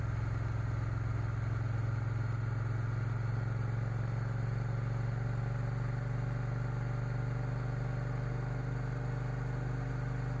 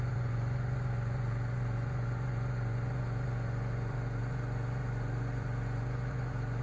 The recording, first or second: first